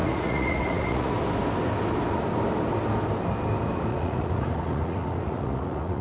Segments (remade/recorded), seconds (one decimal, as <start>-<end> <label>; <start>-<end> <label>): 0.0-1.1 remade; 1.1-3.9 recorded; 3.9-6.0 remade